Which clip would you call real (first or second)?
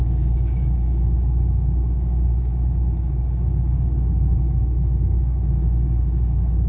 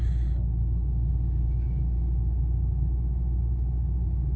second